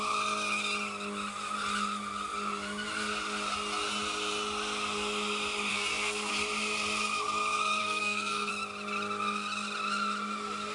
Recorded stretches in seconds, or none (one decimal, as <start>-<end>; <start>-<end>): 0.0-5.7; 6.3-7.8; 8.5-10.7